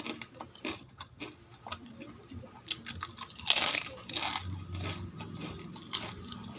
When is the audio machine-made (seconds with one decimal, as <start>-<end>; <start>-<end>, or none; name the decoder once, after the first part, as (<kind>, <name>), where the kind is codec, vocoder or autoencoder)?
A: 0.7-1.2 (vocoder, HiFi-GAN)